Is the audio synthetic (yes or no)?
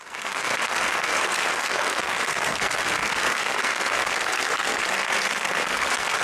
yes